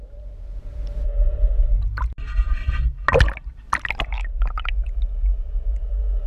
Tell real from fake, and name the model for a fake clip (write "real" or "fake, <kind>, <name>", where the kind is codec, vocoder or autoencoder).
real